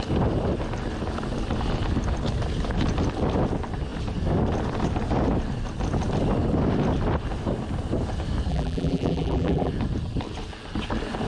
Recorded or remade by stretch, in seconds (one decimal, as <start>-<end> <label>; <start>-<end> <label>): 0.0-8.5 recorded; 8.5-9.7 remade; 9.7-11.3 recorded

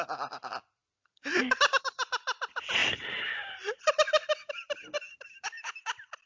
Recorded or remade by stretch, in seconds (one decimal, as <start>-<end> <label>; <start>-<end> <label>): 0.0-2.8 recorded; 2.8-3.8 remade; 3.8-6.3 recorded

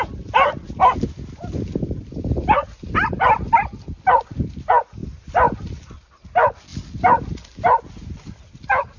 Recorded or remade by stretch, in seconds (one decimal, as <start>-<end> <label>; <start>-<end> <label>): 0.0-5.0 recorded; 5.0-6.0 remade; 6.0-9.0 recorded

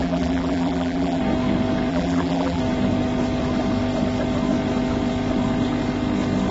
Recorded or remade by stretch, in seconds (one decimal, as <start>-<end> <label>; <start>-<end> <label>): 0.0-1.2 remade; 1.2-1.9 recorded; 1.9-2.6 remade; 2.6-6.5 recorded

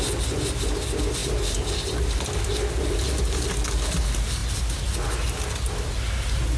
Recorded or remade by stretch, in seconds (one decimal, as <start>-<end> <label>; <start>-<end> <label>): 0.0-6.6 recorded

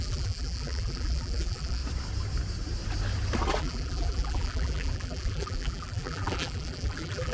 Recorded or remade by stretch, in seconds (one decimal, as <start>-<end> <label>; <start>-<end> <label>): 0.0-1.8 remade; 1.8-3.6 recorded; 3.6-7.3 remade